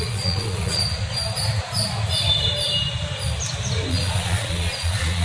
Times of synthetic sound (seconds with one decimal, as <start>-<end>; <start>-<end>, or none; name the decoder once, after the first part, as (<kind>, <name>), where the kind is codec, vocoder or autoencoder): 0.0-0.8 (vocoder, Vocos); 3.9-5.2